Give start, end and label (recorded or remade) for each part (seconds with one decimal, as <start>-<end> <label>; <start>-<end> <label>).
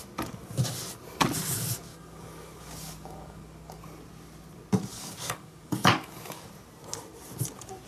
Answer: 0.0-1.9 recorded; 1.9-3.8 remade; 3.8-4.9 recorded; 4.9-6.5 remade; 6.5-7.9 recorded